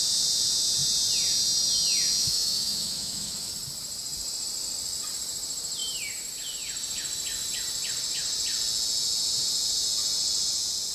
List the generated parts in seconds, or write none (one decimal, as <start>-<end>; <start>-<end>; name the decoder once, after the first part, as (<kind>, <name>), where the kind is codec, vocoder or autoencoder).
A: 2.2-3.5 (autoencoder, DAC-VAE)